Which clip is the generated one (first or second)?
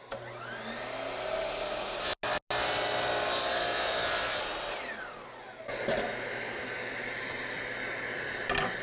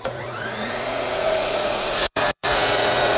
second